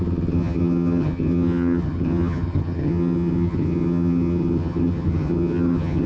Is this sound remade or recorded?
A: remade